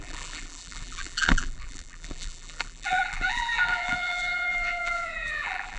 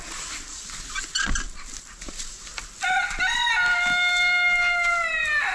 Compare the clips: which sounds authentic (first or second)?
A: second